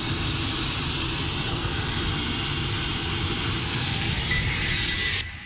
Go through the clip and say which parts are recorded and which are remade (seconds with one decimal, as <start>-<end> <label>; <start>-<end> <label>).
0.0-1.5 recorded; 1.5-2.0 remade; 2.0-3.6 recorded; 3.6-4.2 remade; 4.2-5.5 recorded